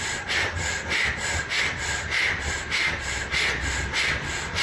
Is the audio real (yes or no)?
yes